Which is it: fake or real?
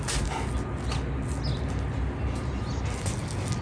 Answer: real